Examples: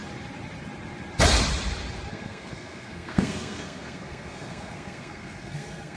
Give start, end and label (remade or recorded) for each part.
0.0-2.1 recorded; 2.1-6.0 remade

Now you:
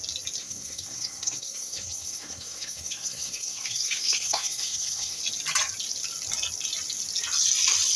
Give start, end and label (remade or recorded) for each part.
0.0-0.4 recorded; 0.4-5.2 remade; 5.2-8.0 recorded

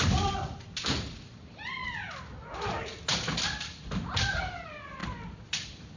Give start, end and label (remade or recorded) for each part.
0.0-1.8 remade; 1.8-4.4 recorded; 4.4-6.0 remade

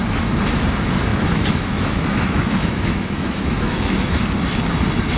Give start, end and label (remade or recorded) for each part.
0.0-1.1 recorded; 1.1-4.2 remade; 4.2-5.2 recorded

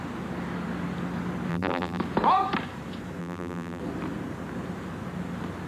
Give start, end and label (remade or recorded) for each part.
0.0-1.5 recorded; 1.5-2.0 remade; 2.0-3.2 recorded; 3.2-3.8 remade; 3.8-5.7 recorded

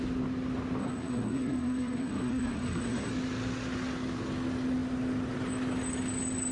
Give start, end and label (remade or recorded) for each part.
0.0-0.8 recorded; 0.8-3.1 remade; 3.1-6.5 recorded